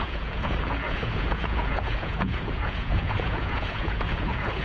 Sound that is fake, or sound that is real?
fake